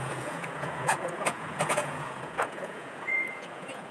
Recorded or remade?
remade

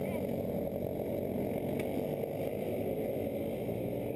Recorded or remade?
recorded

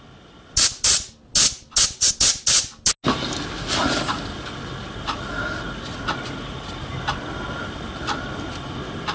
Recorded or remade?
recorded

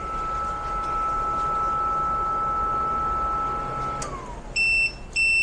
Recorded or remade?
recorded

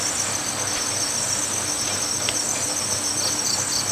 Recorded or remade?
recorded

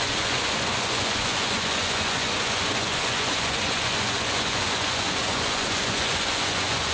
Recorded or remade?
remade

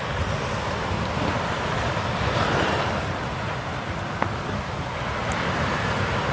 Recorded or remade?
recorded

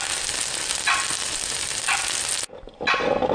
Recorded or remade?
recorded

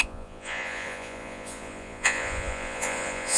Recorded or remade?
remade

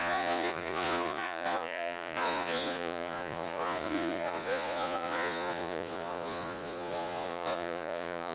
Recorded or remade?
remade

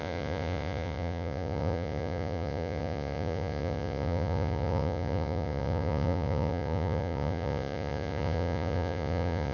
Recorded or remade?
remade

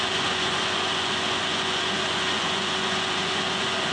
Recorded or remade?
remade